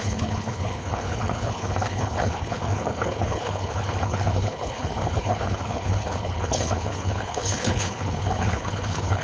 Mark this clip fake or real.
fake